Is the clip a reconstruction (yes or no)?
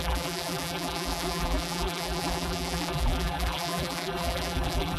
yes